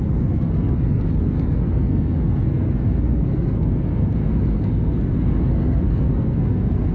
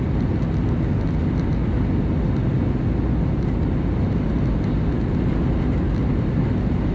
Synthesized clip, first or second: first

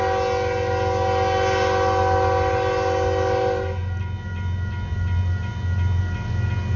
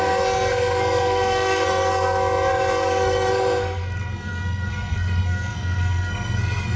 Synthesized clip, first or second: second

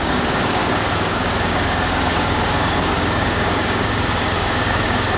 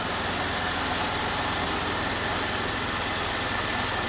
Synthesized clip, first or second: first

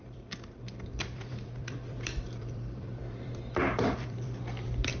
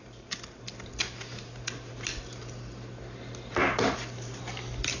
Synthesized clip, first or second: first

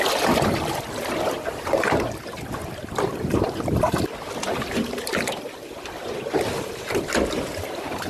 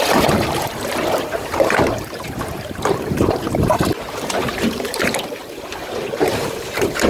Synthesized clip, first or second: second